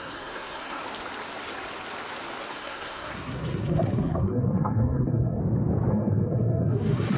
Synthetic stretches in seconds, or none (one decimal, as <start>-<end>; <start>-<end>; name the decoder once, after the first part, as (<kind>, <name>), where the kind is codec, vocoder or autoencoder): 0.0-0.8 (codec, SNAC); 2.5-5.4; 5.9-7.2